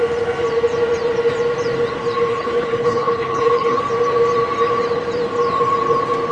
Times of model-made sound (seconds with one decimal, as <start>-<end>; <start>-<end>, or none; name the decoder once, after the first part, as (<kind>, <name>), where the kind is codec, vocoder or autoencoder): 2.3-3.8 (codec, HILCodec)